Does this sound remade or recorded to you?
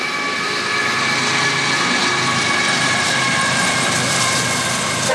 recorded